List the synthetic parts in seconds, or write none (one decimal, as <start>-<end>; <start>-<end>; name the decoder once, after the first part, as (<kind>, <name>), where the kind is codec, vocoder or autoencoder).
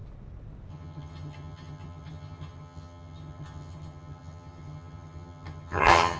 0.7-6.2 (vocoder, HiFi-GAN)